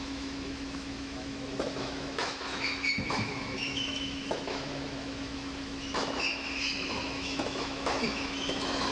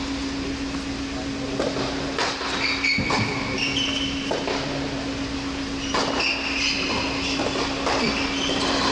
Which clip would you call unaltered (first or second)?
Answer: second